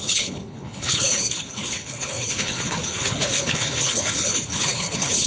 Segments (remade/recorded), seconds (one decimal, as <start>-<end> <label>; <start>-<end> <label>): 0.0-5.3 remade